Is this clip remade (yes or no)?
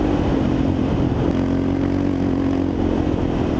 no